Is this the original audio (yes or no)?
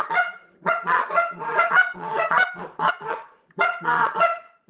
no